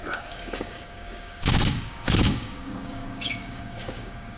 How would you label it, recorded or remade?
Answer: remade